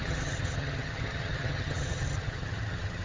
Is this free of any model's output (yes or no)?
no